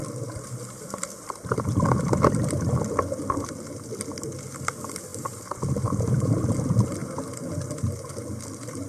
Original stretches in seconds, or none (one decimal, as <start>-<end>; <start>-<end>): 0.0-5.1; 6.4-8.9